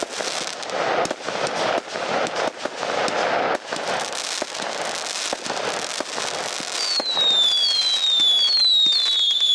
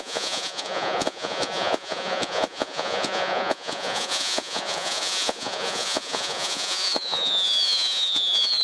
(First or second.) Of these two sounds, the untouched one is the first